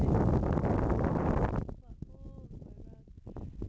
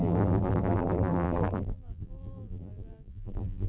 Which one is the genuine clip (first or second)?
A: first